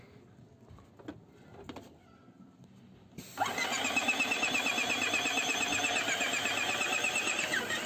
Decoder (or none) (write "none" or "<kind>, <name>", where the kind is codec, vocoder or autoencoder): none